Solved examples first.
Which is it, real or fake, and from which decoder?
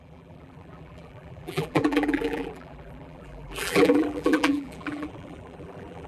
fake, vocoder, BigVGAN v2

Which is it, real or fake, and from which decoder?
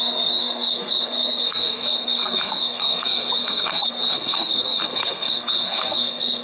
fake, codec, SNAC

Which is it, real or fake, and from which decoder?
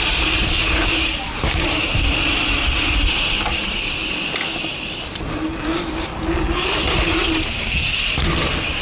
real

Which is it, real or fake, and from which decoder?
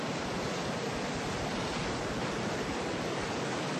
real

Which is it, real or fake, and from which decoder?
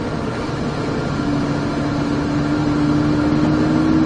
real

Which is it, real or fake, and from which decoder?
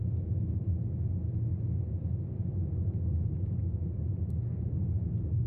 real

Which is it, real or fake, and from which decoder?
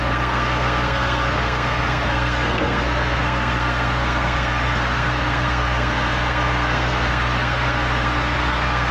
fake, codec, SNAC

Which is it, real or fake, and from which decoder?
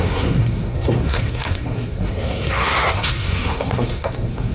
fake, codec, SNAC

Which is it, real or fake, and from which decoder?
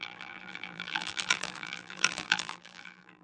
fake, vocoder, BigVGAN v2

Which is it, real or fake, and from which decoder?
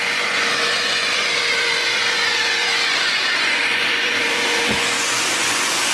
fake, vocoder, Vocos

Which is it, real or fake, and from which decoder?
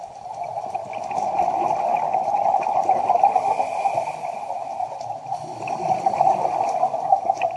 real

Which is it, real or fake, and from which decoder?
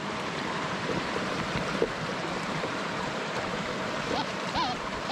fake, vocoder, BigVGAN v2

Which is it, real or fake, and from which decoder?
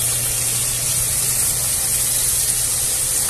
real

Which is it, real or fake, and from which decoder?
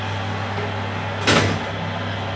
real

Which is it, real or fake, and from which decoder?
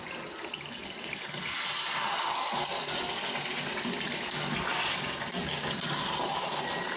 real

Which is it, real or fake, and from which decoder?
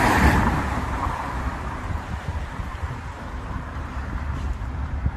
fake, vocoder, BigVGAN v2